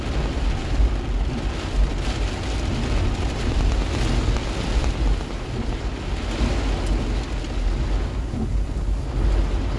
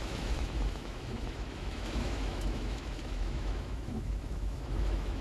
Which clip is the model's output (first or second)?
second